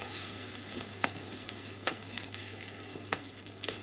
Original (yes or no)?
no